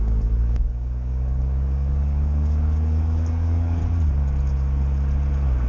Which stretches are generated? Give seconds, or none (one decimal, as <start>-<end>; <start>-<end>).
0.0-3.8